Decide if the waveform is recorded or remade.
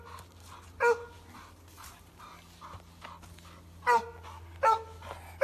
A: recorded